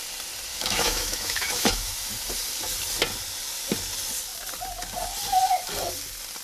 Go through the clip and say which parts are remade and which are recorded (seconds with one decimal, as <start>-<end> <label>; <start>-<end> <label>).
0.0-0.5 recorded; 0.5-2.1 remade; 2.1-6.4 recorded